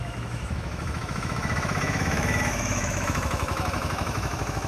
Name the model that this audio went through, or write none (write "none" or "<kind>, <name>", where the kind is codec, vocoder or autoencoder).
autoencoder, DAC-VAE